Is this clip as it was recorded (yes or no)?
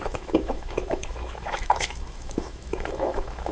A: no